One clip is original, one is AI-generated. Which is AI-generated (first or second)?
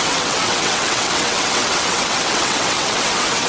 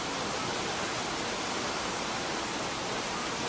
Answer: first